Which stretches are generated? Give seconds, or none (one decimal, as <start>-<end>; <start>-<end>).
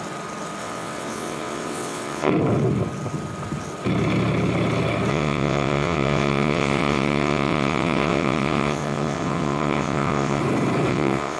0.6-2.3; 5.1-10.4; 10.9-11.4